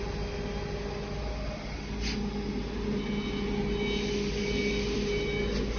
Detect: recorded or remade recorded